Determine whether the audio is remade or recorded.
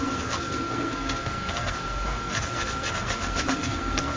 remade